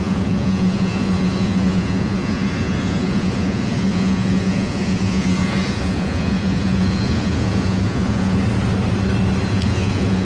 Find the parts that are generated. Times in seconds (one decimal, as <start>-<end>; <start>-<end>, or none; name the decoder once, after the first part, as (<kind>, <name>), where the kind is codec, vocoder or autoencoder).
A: 0.0-8.4 (vocoder, Vocos); 9.5-10.2